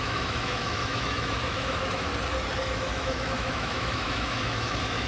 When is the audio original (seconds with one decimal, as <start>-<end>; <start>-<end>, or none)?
2.1-2.6

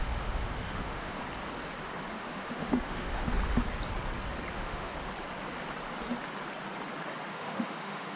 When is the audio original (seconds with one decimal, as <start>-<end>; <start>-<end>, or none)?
1.2-2.1; 3.2-4.5; 4.9-7.3

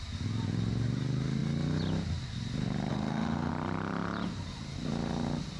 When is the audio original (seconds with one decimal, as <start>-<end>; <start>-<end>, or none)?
0.0-2.9; 3.5-5.6

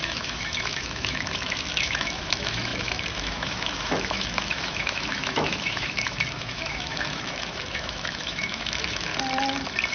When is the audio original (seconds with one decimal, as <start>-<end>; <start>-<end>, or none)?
9.1-9.9

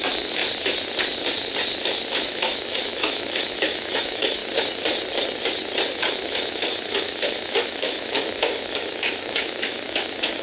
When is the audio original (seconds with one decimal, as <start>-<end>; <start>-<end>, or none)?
0.4-2.1; 4.4-6.0